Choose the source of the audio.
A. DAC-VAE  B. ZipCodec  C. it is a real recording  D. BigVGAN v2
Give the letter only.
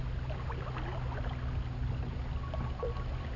C